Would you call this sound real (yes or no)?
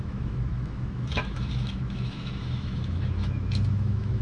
no